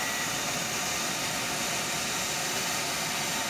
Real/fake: real